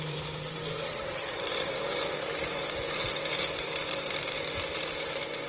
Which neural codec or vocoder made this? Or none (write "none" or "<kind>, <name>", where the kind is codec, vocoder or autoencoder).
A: vocoder, BigVGAN v2